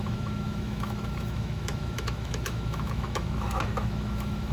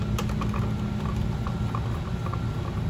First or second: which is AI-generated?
first